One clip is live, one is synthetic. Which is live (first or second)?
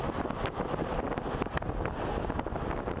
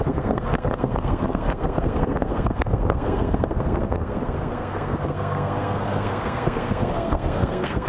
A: first